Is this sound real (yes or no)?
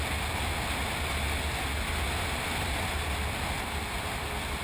yes